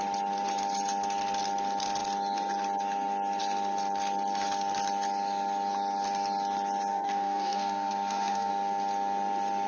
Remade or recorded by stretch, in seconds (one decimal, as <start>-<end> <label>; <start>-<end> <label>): 0.0-6.9 recorded; 6.9-8.5 remade; 8.5-9.7 recorded